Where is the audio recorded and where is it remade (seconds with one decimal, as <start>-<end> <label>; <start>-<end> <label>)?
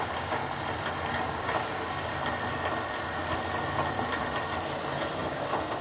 0.0-0.4 remade; 0.4-1.3 recorded; 1.3-2.1 remade; 2.1-5.2 recorded; 5.2-5.8 remade